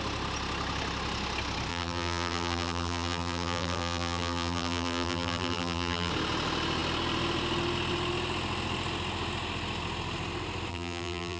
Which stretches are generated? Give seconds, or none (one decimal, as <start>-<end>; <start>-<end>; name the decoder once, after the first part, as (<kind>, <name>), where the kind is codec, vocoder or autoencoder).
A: 1.7-6.1 (vocoder, BigVGAN v2); 10.7-11.4